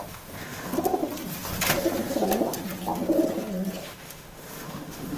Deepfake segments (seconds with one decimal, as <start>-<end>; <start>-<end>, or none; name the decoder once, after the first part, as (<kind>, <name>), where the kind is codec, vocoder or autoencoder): 0.0-0.7 (autoencoder, DAC-VAE); 3.8-5.2